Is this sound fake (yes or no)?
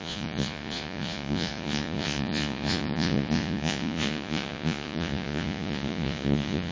yes